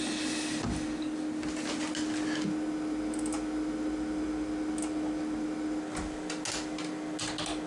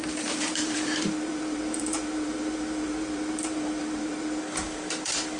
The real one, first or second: first